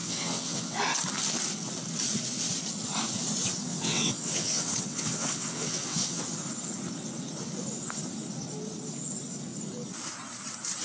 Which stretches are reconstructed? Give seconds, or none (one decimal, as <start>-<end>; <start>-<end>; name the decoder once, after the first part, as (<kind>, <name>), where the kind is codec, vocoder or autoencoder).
0.0-0.8 (vocoder, WaveNeXt); 3.7-6.2